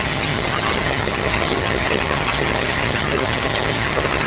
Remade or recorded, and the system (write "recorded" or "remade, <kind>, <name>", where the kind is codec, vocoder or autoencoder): remade, vocoder, HiFi-GAN